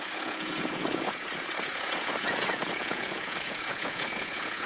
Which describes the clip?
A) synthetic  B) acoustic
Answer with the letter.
A